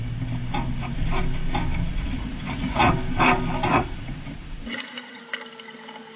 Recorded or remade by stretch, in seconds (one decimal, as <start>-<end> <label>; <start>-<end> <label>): 0.0-1.9 recorded; 1.9-2.9 remade; 2.9-3.7 recorded; 3.7-5.2 remade; 5.2-6.2 recorded